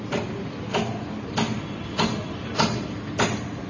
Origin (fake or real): real